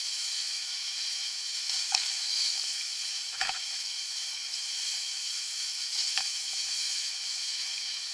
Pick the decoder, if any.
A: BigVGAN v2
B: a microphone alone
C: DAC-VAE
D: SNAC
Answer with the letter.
C